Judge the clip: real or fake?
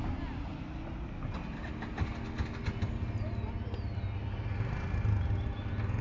real